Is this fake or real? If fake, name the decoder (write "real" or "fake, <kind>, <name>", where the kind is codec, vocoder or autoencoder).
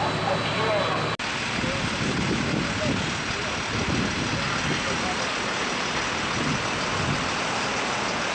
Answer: real